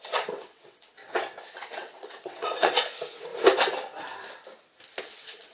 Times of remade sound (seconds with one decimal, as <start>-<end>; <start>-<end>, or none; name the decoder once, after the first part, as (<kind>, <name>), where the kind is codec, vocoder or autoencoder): 0.0-1.0 (vocoder, WaveNeXt); 1.7-3.3; 5.0-5.5